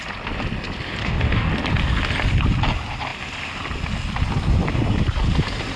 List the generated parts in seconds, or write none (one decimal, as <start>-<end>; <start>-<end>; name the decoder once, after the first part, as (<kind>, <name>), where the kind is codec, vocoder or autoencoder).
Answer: 1.0-1.5 (codec, DAC)